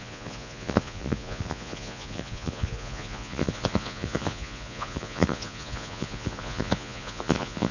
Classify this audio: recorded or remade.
remade